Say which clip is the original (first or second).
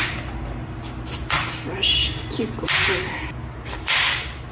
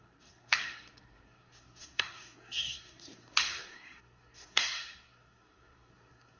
first